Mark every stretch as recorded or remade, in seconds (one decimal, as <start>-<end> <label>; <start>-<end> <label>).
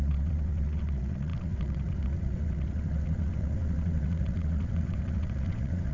0.0-5.9 remade